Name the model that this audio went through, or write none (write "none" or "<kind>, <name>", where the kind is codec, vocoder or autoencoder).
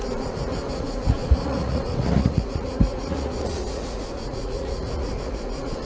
vocoder, Vocos